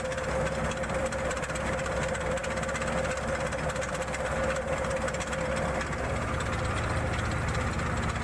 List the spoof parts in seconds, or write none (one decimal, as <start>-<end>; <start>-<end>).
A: none